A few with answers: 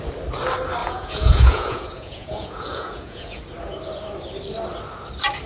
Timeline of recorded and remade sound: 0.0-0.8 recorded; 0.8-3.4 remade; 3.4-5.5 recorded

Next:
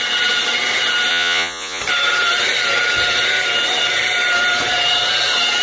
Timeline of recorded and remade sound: 0.0-1.1 recorded; 1.1-1.8 remade; 1.8-5.6 recorded